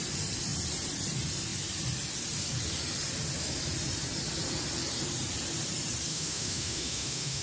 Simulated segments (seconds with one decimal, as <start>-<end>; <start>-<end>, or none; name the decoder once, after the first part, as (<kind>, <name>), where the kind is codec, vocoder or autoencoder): 6.1-7.4 (autoencoder, DAC-VAE)